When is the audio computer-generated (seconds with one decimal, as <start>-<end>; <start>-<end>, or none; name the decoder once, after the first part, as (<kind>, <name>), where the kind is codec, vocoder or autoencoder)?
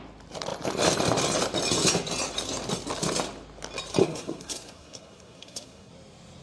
4.0-5.9 (codec, SNAC)